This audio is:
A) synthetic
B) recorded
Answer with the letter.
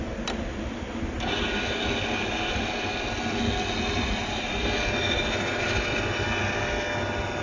B